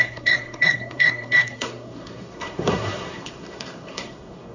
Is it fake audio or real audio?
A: fake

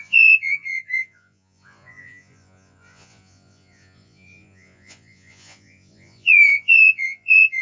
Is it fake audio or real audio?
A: fake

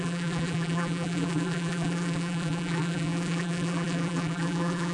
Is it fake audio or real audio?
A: fake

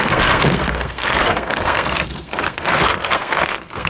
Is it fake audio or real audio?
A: fake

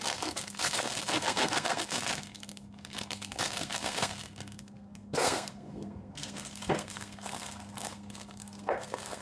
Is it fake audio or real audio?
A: fake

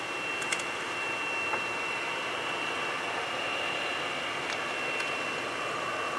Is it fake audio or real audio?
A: real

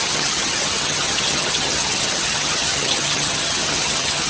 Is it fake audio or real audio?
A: fake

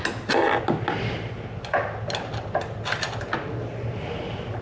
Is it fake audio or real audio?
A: real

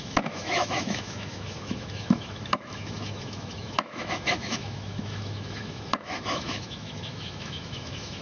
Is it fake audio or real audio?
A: fake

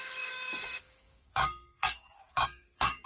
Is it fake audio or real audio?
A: fake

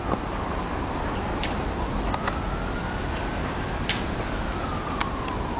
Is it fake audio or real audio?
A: real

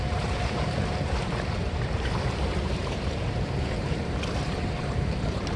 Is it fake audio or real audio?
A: fake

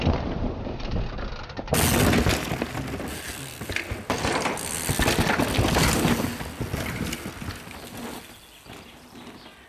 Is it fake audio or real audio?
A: real